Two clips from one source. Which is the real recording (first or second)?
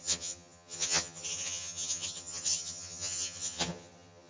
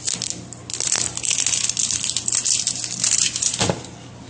second